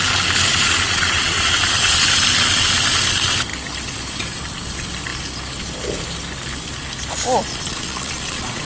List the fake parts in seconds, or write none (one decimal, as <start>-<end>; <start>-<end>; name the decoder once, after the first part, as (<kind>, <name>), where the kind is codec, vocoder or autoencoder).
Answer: 0.5-2.0 (vocoder, Vocos); 7.5-8.6